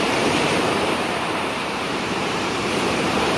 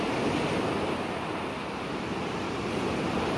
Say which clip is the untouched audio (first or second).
second